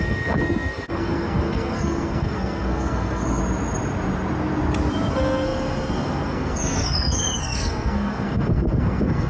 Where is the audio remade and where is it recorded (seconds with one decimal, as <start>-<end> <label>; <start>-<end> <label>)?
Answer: 0.0-3.4 remade; 3.4-5.1 recorded; 5.1-9.3 remade